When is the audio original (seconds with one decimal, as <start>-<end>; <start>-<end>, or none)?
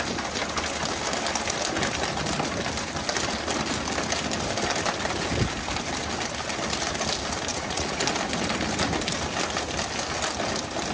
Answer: 0.0-7.5; 8.0-10.9